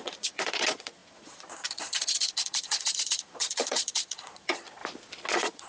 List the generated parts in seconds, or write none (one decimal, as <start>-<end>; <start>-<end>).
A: 0.0-4.8; 5.3-5.7